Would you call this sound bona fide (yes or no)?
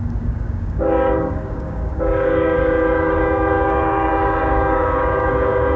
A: no